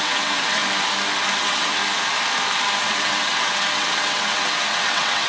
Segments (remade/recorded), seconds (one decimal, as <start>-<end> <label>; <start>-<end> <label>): 0.0-0.6 remade; 0.6-1.4 recorded; 1.4-1.8 remade; 1.8-2.8 recorded; 2.8-5.3 remade